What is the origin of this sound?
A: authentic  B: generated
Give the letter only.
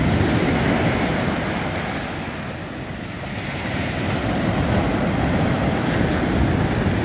A